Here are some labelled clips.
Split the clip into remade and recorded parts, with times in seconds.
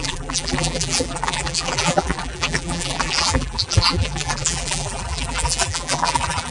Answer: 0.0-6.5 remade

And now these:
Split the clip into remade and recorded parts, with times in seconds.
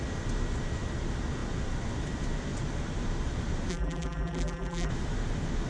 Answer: 0.0-3.7 recorded; 3.7-4.9 remade; 4.9-5.7 recorded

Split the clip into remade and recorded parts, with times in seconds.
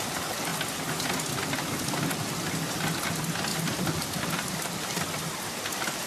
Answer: 0.0-3.5 recorded; 3.5-5.0 remade; 5.0-6.1 recorded